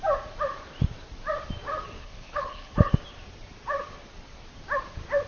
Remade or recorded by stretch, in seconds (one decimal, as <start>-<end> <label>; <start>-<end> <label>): 0.0-2.0 recorded; 2.0-2.9 remade; 2.9-5.3 recorded